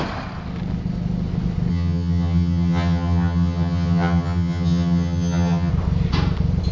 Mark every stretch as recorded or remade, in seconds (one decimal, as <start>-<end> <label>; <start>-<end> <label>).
0.0-1.7 recorded; 1.7-5.7 remade; 5.7-6.7 recorded